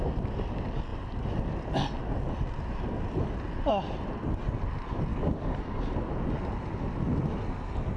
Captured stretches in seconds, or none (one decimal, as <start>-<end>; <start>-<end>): 0.0-5.1; 5.8-8.0